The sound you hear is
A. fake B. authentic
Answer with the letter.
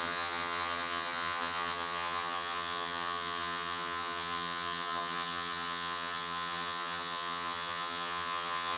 A